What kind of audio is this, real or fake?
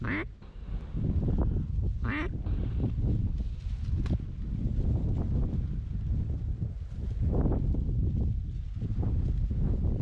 real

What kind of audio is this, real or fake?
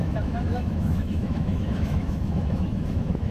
fake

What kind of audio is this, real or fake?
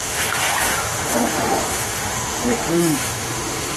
fake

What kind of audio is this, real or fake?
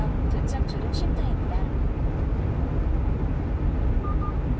real